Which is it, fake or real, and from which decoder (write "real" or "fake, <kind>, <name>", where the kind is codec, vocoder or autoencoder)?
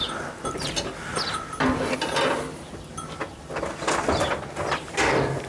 real